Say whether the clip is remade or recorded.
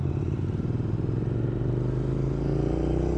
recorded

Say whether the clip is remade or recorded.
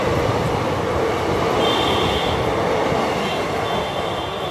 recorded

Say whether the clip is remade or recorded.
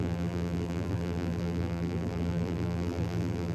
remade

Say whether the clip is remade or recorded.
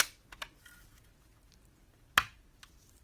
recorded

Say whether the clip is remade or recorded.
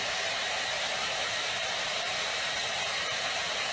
remade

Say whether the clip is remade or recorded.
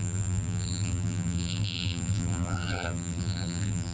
remade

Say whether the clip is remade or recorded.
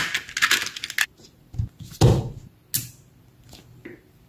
recorded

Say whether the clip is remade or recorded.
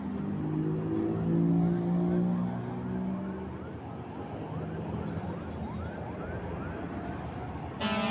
recorded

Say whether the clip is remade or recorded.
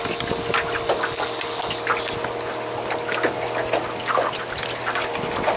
recorded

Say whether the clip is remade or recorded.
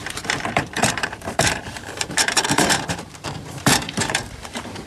remade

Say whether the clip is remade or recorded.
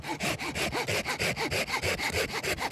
recorded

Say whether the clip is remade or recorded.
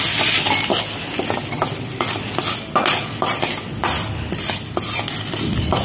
recorded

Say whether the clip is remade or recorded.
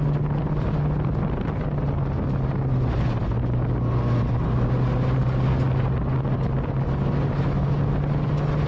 recorded